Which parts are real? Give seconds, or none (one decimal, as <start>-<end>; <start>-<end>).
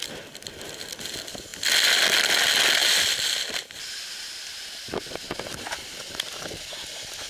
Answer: 0.0-7.3